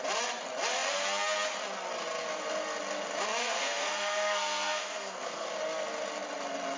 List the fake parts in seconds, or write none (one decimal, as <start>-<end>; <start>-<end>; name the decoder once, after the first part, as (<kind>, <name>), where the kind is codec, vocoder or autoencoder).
3.4-5.5 (codec, SNAC)